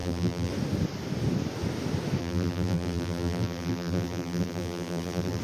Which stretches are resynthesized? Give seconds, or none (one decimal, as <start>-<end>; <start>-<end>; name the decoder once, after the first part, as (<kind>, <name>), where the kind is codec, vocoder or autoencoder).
0.0-0.5 (vocoder, BigVGAN v2); 2.2-5.4